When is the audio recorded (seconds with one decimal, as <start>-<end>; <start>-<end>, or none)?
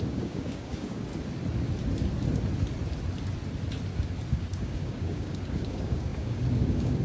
1.1-4.3